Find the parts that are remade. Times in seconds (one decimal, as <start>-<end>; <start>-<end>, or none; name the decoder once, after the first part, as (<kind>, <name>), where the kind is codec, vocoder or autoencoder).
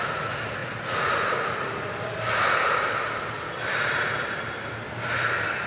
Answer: 0.6-1.8 (vocoder, Vocos)